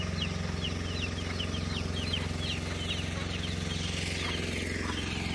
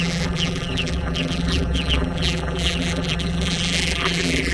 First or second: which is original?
first